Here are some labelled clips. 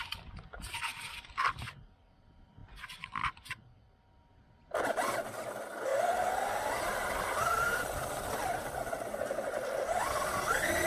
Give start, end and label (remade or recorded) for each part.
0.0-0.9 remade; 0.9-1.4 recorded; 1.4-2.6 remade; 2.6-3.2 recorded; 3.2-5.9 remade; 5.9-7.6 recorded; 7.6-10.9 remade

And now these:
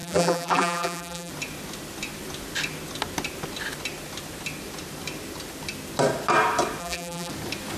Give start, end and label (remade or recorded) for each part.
0.0-1.3 remade; 1.3-6.8 recorded; 6.8-7.3 remade; 7.3-7.8 recorded

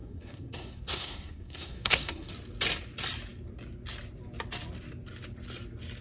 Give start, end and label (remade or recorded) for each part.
0.0-2.3 remade; 2.3-6.0 recorded

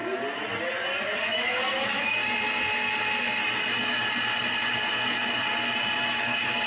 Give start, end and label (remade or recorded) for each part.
0.0-1.2 recorded; 1.2-2.2 remade; 2.2-6.1 recorded; 6.1-6.7 remade

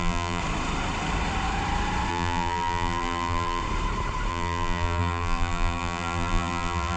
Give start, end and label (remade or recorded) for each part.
0.0-0.4 remade; 0.4-2.1 recorded; 2.1-3.6 remade; 3.6-4.3 recorded; 4.3-7.0 remade

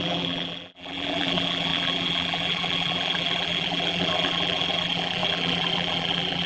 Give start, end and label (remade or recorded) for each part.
0.0-6.5 remade

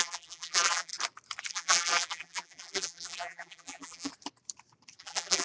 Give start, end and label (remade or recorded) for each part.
0.0-0.9 remade; 0.9-1.5 recorded; 1.5-4.1 remade; 4.1-5.0 recorded; 5.0-5.4 remade